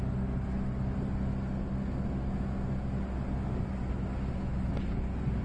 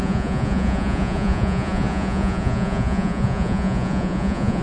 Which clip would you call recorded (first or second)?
first